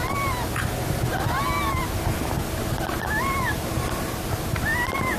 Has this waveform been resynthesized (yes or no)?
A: no